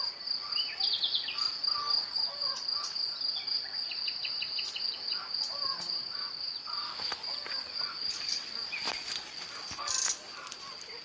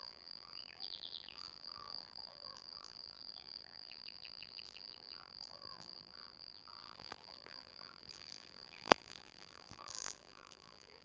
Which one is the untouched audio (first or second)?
first